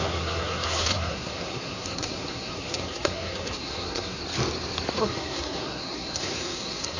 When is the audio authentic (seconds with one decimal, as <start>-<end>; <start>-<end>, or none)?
4.2-5.0